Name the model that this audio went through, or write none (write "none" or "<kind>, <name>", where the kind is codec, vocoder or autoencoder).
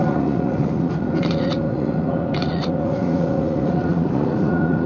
vocoder, Vocos